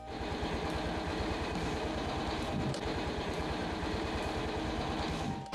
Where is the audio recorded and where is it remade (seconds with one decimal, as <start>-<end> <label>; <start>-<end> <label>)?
0.0-1.1 recorded; 1.1-4.4 remade; 4.4-5.5 recorded